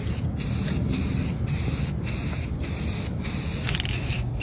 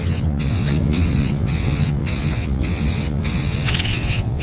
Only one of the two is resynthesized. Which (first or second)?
second